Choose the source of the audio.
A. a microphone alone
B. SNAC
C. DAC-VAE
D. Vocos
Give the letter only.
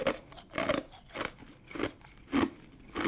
A